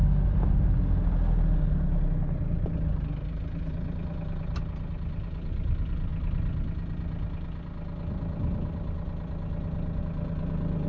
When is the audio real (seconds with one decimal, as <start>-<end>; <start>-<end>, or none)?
0.0-10.9